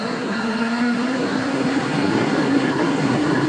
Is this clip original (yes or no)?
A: no